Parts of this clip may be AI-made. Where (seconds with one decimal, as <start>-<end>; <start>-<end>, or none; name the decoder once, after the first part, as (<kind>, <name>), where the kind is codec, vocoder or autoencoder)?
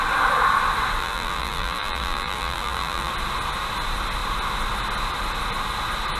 1.0-3.1 (vocoder, BigVGAN v2)